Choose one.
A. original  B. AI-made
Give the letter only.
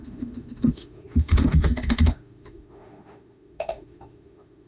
B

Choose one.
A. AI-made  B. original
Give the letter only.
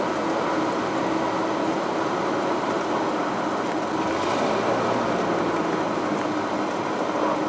B